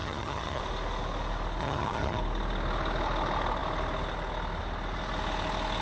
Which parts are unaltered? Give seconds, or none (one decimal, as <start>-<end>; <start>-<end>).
0.6-1.6; 2.2-5.8